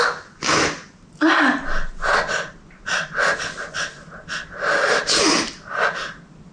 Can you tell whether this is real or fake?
real